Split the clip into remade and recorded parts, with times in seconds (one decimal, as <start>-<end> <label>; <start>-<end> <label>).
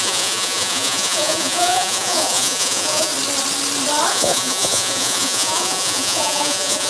0.0-3.1 remade; 3.1-4.1 recorded; 4.1-6.9 remade